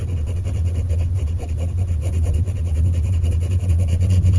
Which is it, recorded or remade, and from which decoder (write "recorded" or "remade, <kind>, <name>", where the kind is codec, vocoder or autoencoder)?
remade, vocoder, WaveNeXt